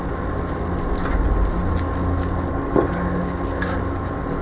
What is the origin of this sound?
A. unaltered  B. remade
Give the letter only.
A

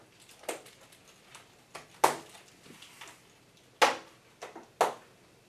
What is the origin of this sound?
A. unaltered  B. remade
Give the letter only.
A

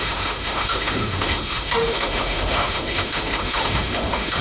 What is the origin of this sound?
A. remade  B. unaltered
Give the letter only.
A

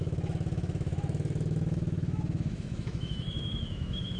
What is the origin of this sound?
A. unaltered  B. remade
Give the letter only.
B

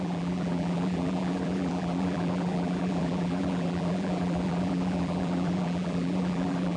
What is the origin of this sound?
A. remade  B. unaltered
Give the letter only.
A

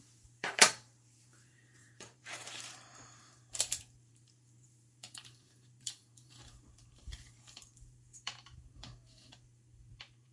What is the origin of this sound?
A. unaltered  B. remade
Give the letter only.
B